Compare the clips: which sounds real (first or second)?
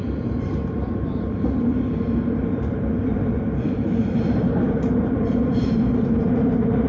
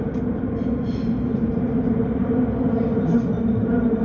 second